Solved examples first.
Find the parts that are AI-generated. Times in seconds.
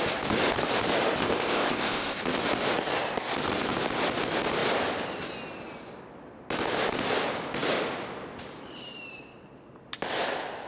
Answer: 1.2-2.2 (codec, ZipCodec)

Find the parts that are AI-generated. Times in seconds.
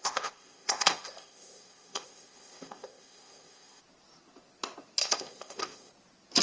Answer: 0.0-3.8 (codec, ZipCodec); 5.0-5.9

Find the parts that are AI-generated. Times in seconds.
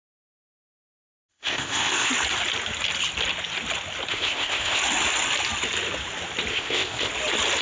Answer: 1.3-2.1 (codec, ZipCodec); 4.1-4.8; 6.5-7.1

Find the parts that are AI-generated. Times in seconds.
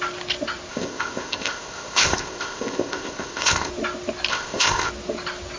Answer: 0.7-3.7 (codec, ZipCodec); 4.3-4.9